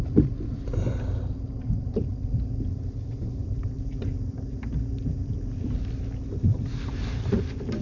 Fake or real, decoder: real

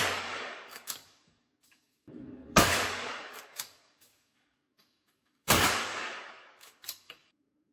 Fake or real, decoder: fake, codec, DAC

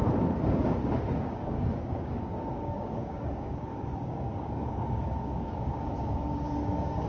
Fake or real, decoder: fake, codec, DAC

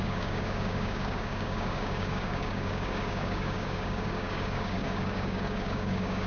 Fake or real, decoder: fake, codec, DAC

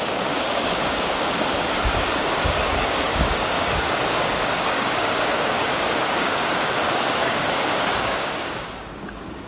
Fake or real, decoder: fake, codec, DAC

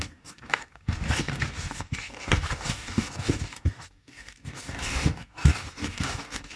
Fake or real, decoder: fake, codec, DAC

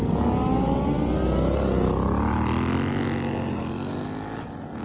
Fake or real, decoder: real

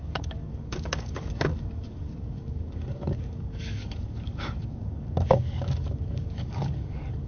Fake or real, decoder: fake, codec, DAC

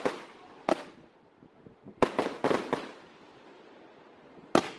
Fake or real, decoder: real